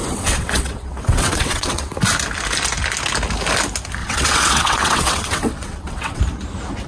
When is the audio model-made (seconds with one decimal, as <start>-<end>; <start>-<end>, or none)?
0.0-1.9; 4.0-6.2